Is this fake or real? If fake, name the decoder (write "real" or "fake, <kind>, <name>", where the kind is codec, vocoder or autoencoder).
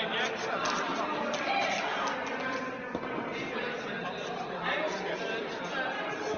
real